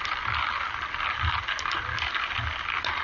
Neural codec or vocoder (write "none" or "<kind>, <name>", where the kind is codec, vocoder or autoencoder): none